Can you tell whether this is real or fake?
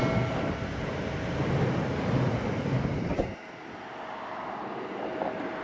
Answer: real